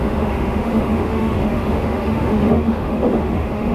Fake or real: fake